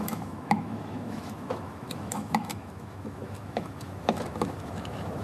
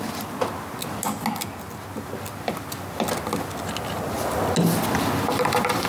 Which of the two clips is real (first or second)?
second